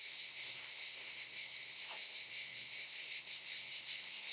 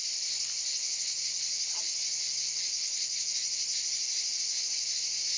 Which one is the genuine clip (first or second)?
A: second